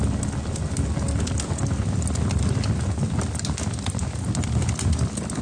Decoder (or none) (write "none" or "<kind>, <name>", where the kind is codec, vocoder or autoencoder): none